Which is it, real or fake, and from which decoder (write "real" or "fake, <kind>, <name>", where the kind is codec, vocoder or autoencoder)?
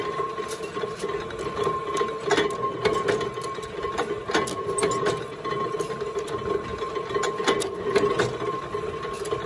real